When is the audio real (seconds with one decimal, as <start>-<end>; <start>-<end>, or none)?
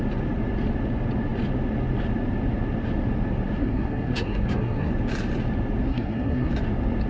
0.0-3.6; 4.9-5.9; 6.5-7.1